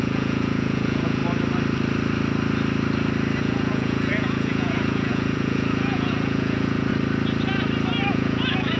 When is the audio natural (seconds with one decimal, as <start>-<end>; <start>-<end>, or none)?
1.2-3.4; 6.9-8.1